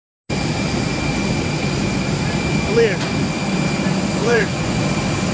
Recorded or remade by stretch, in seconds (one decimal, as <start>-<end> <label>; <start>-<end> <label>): 0.0-4.2 recorded; 4.2-4.8 remade; 4.8-5.3 recorded